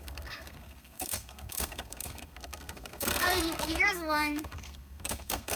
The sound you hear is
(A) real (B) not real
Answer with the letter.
B